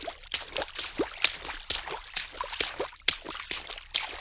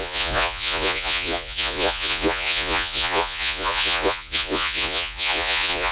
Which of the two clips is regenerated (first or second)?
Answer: second